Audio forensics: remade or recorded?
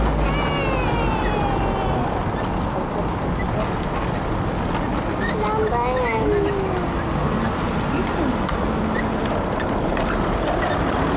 recorded